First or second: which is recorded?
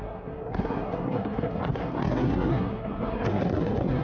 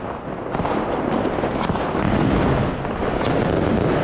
second